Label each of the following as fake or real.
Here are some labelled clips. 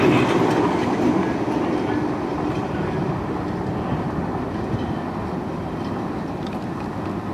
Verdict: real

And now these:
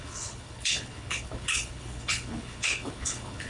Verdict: fake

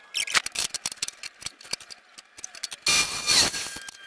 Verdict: real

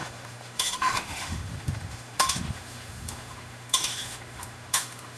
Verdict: fake